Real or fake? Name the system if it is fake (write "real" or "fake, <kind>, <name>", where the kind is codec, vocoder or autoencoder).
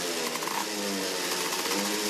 real